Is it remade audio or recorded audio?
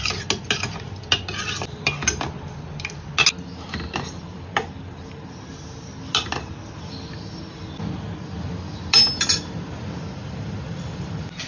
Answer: recorded